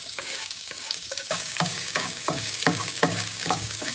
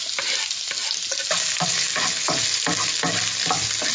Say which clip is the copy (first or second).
first